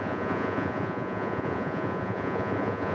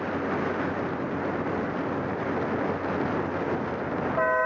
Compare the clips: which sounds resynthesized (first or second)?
first